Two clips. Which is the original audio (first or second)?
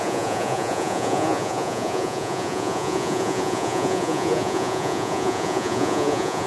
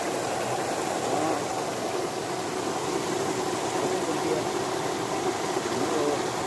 second